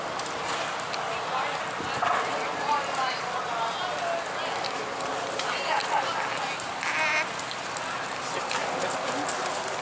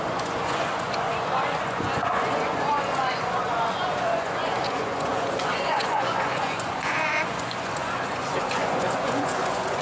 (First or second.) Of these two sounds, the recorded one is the first